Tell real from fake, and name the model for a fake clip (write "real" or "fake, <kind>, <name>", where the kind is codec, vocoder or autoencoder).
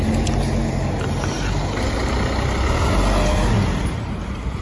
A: real